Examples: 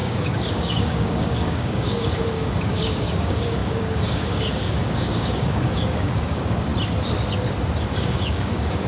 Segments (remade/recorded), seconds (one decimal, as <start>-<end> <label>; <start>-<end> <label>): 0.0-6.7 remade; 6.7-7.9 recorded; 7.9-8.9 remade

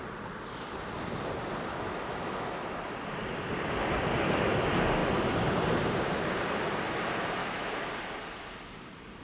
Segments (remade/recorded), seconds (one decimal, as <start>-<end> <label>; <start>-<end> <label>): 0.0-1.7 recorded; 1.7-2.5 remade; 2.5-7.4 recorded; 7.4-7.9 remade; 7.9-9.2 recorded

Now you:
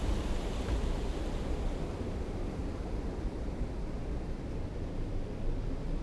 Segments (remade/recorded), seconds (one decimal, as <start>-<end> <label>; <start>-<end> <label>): 0.0-1.9 recorded; 1.9-2.6 remade; 2.6-5.3 recorded; 5.3-6.0 remade

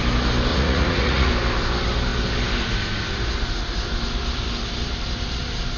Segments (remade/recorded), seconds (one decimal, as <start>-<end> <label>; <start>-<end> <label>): 0.0-0.5 recorded; 0.5-1.3 remade; 1.3-5.8 recorded

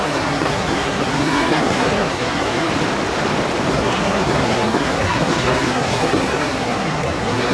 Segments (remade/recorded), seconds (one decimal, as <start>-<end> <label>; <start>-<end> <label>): 0.0-2.7 remade; 2.7-3.7 recorded; 3.7-7.5 remade

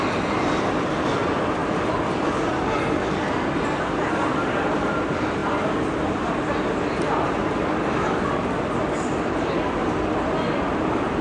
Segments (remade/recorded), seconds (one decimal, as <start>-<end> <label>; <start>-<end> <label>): 0.0-11.2 recorded